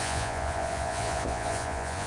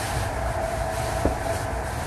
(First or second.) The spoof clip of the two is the first